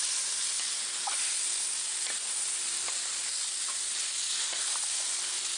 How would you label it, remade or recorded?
recorded